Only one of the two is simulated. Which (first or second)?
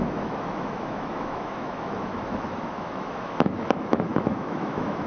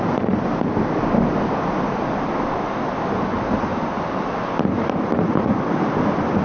first